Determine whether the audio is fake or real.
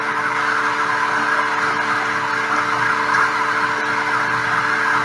real